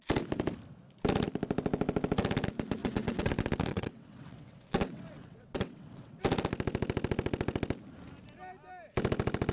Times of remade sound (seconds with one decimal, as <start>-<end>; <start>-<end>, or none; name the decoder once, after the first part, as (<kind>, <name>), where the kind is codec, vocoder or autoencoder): 2.8-3.3 (vocoder, WaveNeXt); 3.7-6.2